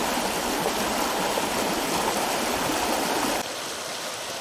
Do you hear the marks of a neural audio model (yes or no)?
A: no